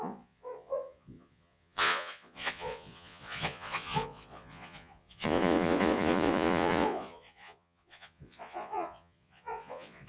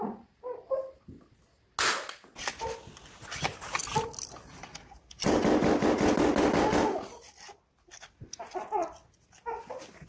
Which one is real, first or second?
second